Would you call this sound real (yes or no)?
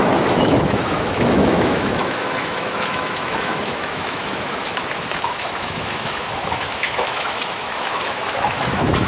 no